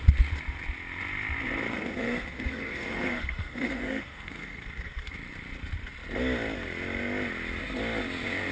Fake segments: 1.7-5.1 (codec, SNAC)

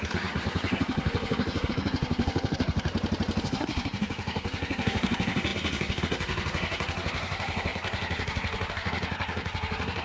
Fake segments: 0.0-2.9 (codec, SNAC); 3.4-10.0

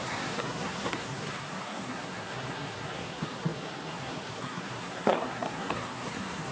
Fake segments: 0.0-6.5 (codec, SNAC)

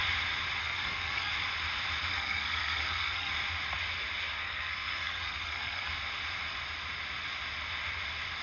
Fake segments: 0.6-1.3 (codec, SNAC); 2.1-3.3; 4.4-5.9

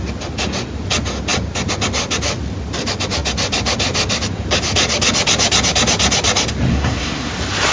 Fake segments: 6.7-7.3 (codec, SNAC)

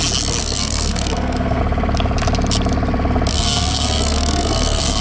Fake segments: 0.4-1.6 (codec, SNAC); 3.3-5.0

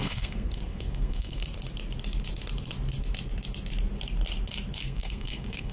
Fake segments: 0.0-1.4 (codec, SNAC); 4.8-5.7

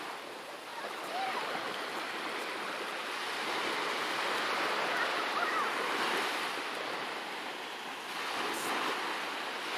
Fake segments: none